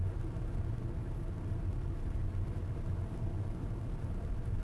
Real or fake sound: real